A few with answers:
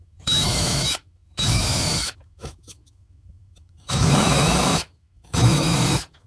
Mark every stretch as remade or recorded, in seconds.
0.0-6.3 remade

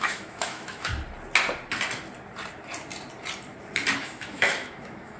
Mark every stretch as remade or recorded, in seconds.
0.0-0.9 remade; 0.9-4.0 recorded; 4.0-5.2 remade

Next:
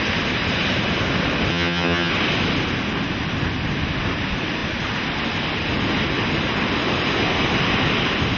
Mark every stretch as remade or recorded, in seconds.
0.0-1.5 recorded; 1.5-2.1 remade; 2.1-8.4 recorded

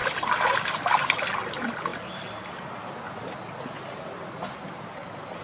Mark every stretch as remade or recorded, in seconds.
0.0-5.4 recorded

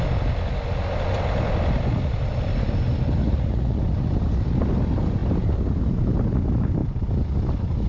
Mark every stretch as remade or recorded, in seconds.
0.0-3.2 recorded; 3.2-3.8 remade; 3.8-7.9 recorded

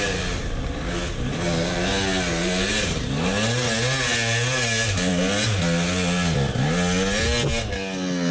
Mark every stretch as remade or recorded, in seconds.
0.0-8.3 recorded

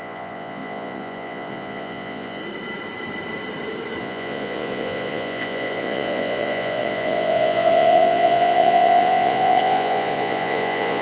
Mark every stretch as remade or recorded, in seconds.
0.0-2.4 remade; 2.4-4.0 recorded; 4.0-11.0 remade